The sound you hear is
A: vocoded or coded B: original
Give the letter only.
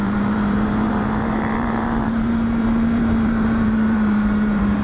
A